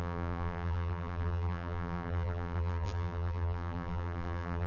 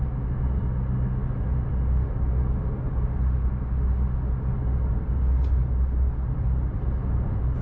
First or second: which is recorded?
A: second